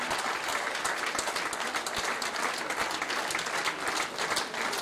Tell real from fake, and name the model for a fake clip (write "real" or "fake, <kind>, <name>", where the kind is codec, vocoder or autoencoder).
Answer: real